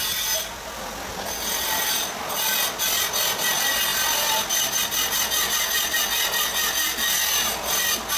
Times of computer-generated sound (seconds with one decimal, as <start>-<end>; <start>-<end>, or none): 1.1-2.2